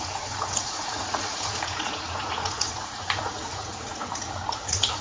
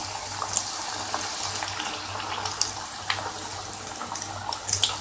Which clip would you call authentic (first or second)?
second